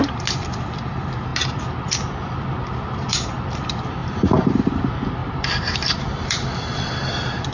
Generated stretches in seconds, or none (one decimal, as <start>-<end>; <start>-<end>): 4.0-4.8; 5.2-6.8